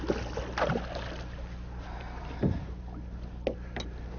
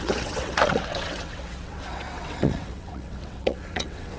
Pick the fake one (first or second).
second